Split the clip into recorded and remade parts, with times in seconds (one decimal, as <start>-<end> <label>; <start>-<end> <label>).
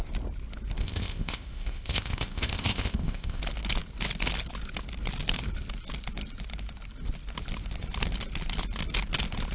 0.0-0.8 recorded; 0.8-3.4 remade; 3.4-9.5 recorded